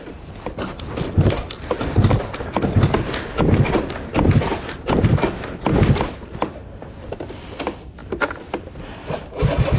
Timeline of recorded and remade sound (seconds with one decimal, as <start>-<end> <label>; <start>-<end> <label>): 0.0-4.5 recorded; 4.5-5.2 remade; 5.2-6.6 recorded; 6.6-7.1 remade; 7.1-9.8 recorded